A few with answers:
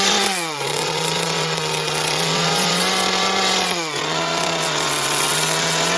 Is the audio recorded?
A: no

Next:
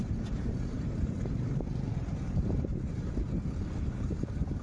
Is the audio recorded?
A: no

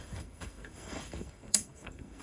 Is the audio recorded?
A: no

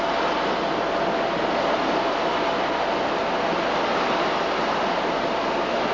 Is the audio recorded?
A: yes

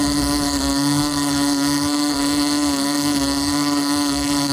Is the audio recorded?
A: no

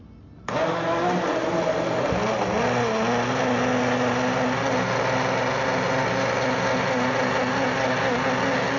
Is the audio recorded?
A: yes